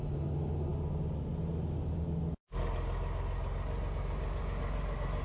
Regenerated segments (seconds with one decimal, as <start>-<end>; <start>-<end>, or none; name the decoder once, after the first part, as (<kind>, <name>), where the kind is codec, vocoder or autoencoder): none